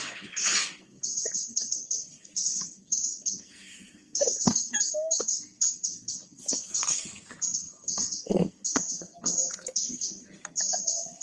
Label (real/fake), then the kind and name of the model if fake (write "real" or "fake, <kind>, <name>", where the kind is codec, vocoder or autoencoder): fake, codec, SNAC